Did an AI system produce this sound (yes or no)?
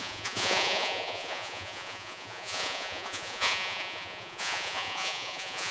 yes